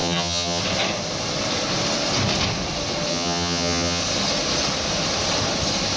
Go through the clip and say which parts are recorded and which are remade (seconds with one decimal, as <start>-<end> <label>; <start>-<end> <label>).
0.0-0.6 remade; 0.6-3.1 recorded; 3.1-4.0 remade; 4.0-6.0 recorded